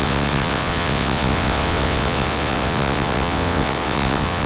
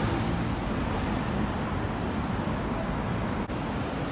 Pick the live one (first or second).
second